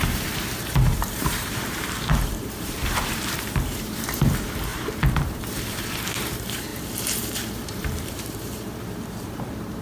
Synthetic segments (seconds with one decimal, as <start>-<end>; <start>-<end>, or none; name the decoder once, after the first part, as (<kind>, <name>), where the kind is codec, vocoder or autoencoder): 0.0-9.8 (vocoder, BigVGAN v2)